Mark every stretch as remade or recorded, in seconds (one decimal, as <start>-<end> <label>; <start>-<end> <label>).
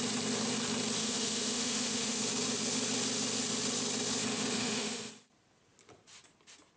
0.0-1.0 recorded; 1.0-2.2 remade; 2.2-4.3 recorded; 4.3-5.1 remade; 5.1-6.8 recorded